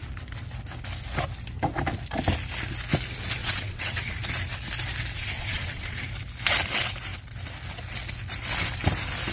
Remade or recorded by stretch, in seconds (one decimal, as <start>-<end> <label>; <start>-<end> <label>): 0.0-3.4 recorded; 3.4-4.1 remade; 4.1-5.2 recorded; 5.2-6.0 remade; 6.0-9.3 recorded